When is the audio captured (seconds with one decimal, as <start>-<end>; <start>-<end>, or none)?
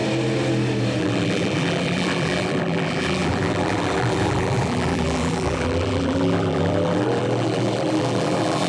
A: 0.0-1.0